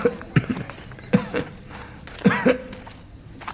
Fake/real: real